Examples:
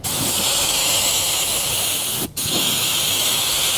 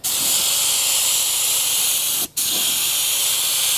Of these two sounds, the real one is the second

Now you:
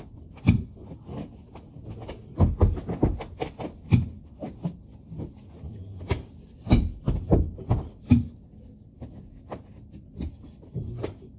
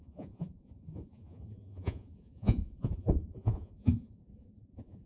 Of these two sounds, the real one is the first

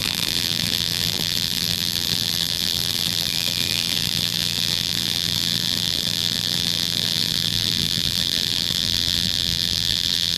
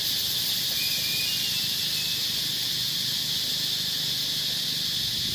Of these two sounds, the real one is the second